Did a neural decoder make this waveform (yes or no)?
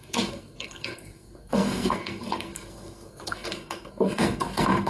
yes